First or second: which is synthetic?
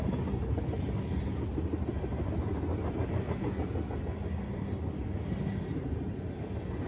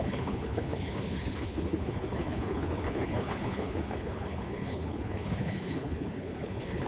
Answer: second